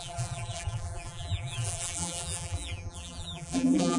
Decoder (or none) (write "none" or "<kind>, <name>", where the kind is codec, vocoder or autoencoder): vocoder, BigVGAN v2